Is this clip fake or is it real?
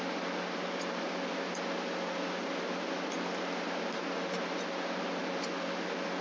real